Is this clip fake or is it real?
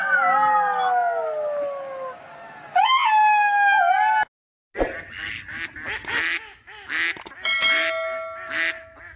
real